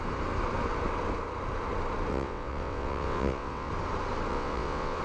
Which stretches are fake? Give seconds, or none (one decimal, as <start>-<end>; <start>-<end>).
2.1-3.7; 4.3-5.0